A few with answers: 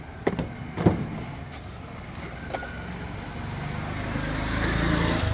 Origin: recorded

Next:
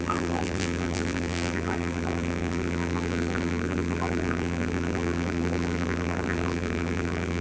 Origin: remade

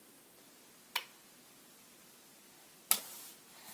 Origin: recorded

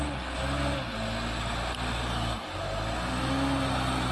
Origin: recorded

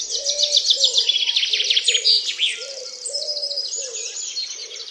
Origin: remade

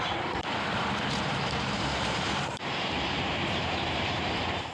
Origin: remade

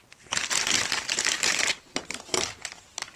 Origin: remade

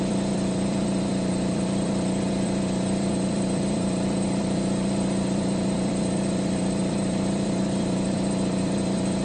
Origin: remade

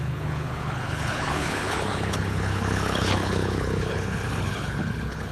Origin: remade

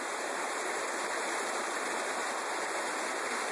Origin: recorded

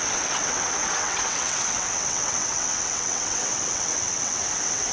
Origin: remade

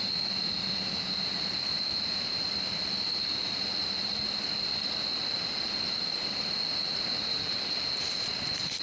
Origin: remade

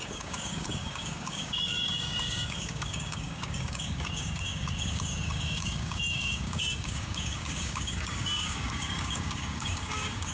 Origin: remade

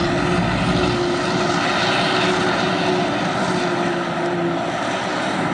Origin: recorded